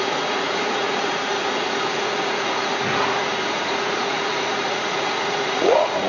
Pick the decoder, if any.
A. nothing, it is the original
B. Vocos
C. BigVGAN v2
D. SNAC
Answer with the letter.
B